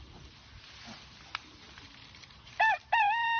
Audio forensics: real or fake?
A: real